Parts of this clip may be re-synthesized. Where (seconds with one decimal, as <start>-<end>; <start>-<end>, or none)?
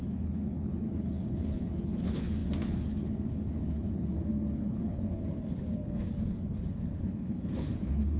0.0-8.2